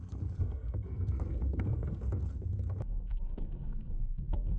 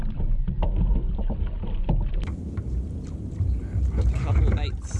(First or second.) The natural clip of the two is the second